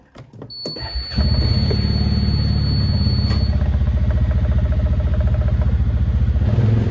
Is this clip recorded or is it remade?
recorded